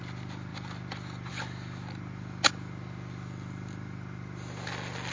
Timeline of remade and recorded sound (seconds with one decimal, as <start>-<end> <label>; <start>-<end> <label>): 0.0-5.1 recorded